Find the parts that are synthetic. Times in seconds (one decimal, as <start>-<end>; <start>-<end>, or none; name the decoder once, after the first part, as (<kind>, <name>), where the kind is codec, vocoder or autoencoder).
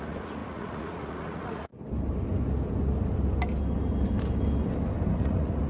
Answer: 0.0-1.7 (vocoder, Vocos); 5.1-5.7